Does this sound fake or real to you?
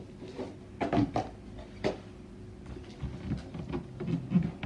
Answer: real